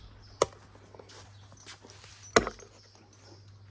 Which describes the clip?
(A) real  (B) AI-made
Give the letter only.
A